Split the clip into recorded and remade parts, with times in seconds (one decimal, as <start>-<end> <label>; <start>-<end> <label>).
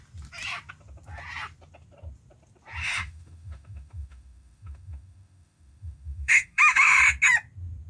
0.0-2.8 recorded; 2.8-7.0 remade; 7.0-7.9 recorded